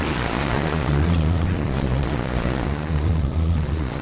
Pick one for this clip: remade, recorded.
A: remade